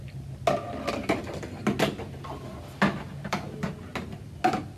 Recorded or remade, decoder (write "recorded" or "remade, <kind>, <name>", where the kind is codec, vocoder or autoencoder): recorded